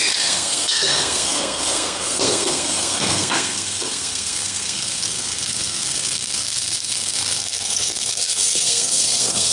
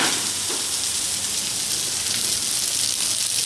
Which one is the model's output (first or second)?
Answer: first